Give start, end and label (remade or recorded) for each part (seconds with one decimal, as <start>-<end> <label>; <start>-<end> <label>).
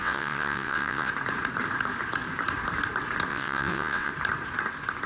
0.0-1.1 remade; 1.1-3.3 recorded; 3.3-4.1 remade; 4.1-5.1 recorded